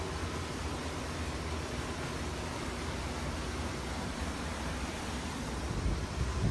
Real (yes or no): no